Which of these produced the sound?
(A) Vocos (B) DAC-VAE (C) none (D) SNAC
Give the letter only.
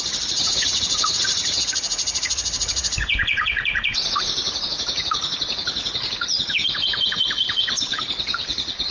A